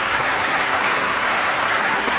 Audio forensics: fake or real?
fake